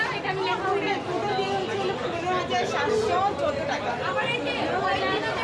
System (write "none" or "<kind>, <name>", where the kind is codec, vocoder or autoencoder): none